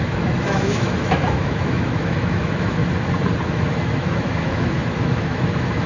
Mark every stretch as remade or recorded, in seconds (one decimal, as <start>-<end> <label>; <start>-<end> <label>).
0.0-2.8 remade; 2.8-3.5 recorded; 3.5-5.9 remade